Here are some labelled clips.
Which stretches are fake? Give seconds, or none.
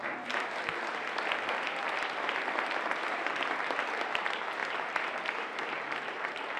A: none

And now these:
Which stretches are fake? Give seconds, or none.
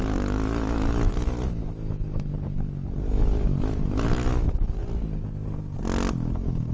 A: 0.0-2.3; 3.1-4.8; 6.1-6.7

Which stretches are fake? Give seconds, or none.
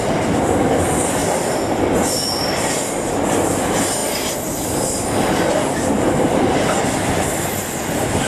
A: none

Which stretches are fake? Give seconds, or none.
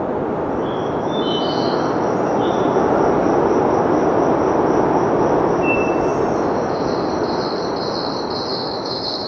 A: 8.5-9.3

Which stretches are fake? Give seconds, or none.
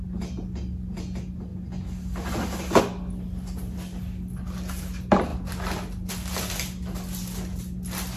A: none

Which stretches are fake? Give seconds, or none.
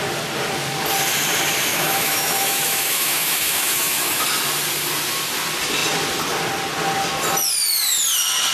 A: 1.7-4.2